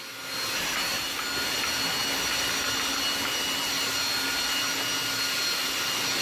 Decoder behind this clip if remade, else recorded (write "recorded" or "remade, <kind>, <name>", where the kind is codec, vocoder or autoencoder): recorded